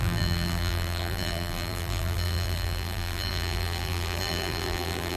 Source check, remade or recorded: remade